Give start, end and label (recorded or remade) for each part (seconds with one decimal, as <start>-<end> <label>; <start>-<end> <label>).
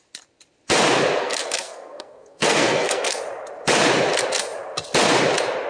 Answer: 0.0-1.2 recorded; 1.2-3.2 remade; 3.2-5.7 recorded